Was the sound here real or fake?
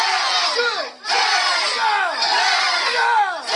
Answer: real